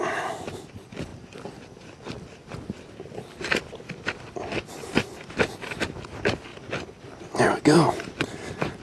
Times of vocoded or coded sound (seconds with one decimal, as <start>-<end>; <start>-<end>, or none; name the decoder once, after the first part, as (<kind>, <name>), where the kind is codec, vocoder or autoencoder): 6.5-8.2 (vocoder, BigVGAN v2)